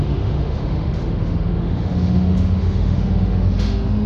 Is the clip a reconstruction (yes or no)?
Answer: yes